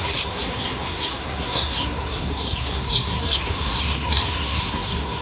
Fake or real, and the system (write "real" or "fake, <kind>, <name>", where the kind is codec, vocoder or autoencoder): fake, codec, SNAC